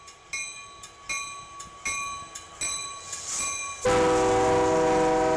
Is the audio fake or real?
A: real